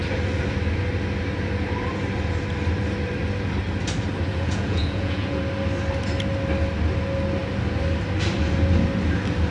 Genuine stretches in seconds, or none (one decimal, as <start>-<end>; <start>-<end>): 0.0-4.3; 5.4-9.5

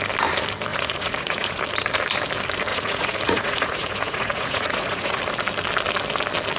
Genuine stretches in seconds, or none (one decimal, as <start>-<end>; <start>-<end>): 0.0-0.7; 1.6-2.7; 5.2-6.6

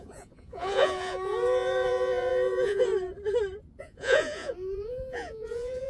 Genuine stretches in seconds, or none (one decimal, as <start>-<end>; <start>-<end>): 2.9-3.8